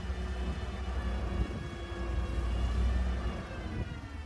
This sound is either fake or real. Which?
real